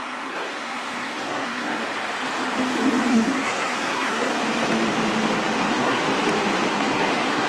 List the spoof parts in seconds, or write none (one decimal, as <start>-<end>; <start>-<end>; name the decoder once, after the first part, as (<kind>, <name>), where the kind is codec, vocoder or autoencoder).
0.0-1.8 (codec, SNAC); 3.1-4.3; 5.6-6.0; 6.7-7.5